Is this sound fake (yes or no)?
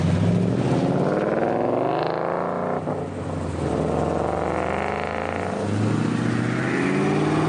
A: no